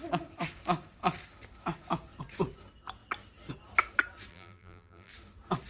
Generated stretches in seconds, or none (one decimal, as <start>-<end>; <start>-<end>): 4.3-5.1